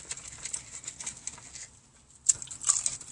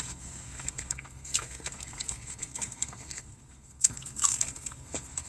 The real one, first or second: first